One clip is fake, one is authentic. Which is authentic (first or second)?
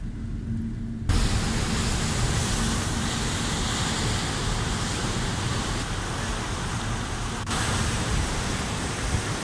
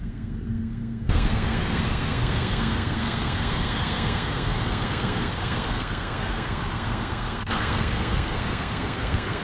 first